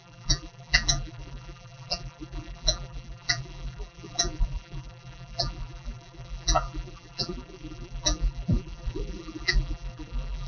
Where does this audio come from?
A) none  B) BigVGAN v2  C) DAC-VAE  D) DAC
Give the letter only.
B